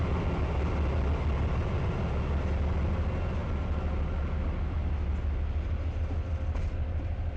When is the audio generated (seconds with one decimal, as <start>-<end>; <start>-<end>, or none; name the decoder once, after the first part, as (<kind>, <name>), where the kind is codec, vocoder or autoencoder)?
none